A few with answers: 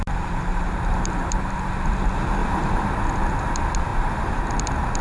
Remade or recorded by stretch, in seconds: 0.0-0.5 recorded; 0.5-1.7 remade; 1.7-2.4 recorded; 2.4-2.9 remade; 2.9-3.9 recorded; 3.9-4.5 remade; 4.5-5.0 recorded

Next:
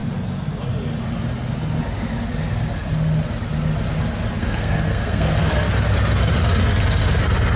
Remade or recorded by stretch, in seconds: 0.0-4.4 recorded; 4.4-5.5 remade; 5.5-7.6 recorded

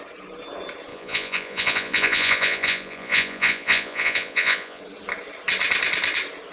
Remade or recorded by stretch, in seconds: 0.0-0.9 recorded; 0.9-4.8 remade; 4.8-6.5 recorded

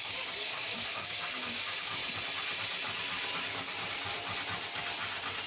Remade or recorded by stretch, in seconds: 0.0-2.0 remade; 2.0-5.5 recorded

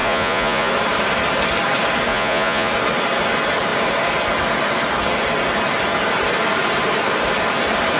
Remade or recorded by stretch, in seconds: 0.0-0.7 remade; 0.7-2.1 recorded; 2.1-2.7 remade; 2.7-8.0 recorded

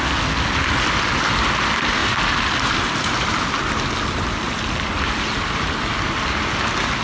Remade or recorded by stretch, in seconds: 0.0-7.0 recorded

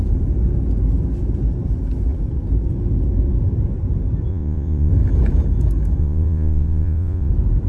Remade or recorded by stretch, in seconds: 0.0-4.3 recorded; 4.3-4.9 remade; 4.9-6.0 recorded; 6.0-7.3 remade; 7.3-7.7 recorded